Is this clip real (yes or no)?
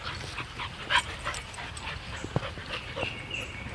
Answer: yes